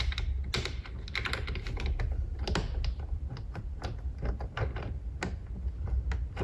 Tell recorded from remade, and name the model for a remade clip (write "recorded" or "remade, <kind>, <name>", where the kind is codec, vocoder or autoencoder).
recorded